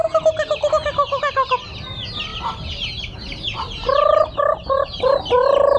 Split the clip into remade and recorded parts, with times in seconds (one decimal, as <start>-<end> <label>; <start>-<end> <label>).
0.0-5.8 recorded